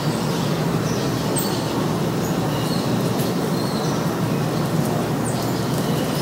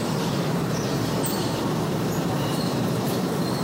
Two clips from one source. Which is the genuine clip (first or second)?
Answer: first